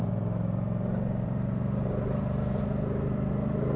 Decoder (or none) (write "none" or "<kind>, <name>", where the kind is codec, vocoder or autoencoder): vocoder, BigVGAN v2